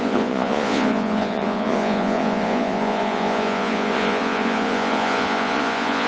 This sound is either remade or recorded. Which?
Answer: remade